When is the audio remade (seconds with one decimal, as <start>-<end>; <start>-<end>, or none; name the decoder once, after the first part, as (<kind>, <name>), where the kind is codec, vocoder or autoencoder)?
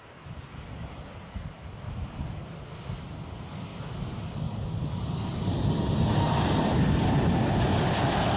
none